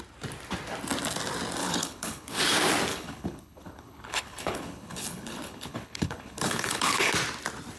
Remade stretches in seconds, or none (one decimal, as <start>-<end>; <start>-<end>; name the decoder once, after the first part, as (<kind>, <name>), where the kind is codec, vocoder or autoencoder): 1.6-2.4 (codec, HILCodec); 2.9-7.1